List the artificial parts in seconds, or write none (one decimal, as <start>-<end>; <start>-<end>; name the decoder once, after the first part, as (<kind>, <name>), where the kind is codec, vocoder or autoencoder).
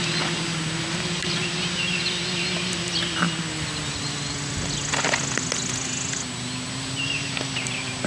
none